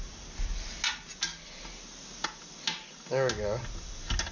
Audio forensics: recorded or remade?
recorded